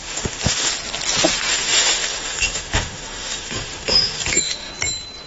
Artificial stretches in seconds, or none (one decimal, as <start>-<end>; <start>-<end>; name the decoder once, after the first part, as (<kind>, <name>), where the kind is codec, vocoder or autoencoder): 0.0-0.7 (autoencoder, DAC-VAE); 1.5-4.7